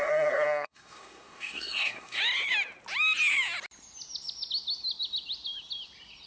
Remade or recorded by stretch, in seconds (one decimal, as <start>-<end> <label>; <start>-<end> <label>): 0.0-2.2 remade; 2.2-6.3 recorded